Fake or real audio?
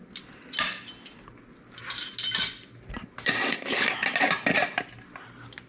real